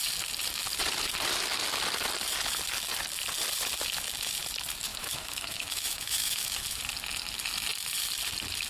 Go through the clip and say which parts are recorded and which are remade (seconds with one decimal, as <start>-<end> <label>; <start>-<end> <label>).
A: 0.0-4.9 recorded; 4.9-6.8 remade; 6.8-8.7 recorded